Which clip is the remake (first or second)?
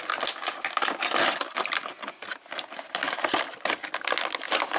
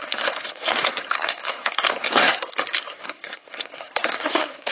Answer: second